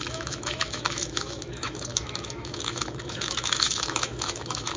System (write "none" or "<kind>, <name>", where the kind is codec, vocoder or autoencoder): autoencoder, DAC-VAE